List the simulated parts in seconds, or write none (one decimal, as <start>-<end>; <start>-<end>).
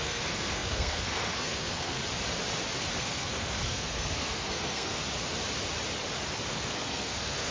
0.0-2.0; 3.0-5.0; 6.5-7.5